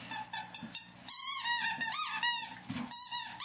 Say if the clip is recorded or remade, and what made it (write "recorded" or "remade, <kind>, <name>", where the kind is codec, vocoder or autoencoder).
recorded